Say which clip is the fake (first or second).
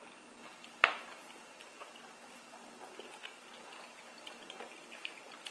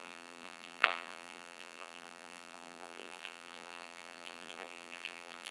second